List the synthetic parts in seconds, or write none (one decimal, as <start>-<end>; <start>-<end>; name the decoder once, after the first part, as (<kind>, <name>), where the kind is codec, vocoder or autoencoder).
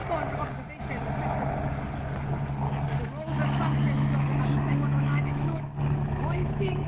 3.0-3.4 (autoencoder, DAC-VAE); 4.5-6.9